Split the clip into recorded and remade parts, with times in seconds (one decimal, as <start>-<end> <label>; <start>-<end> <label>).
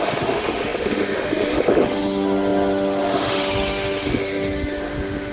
0.0-5.3 remade